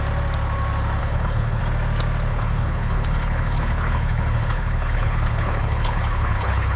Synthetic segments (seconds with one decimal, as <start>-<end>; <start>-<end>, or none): 1.0-1.6; 2.3-6.8